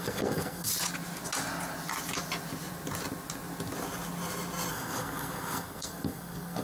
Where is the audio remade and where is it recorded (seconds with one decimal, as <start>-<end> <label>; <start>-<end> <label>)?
0.0-0.7 remade; 0.7-4.7 recorded; 4.7-6.6 remade